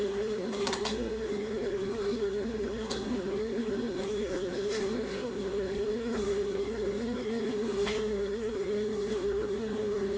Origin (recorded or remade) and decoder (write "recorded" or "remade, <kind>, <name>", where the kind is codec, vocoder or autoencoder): remade, codec, SNAC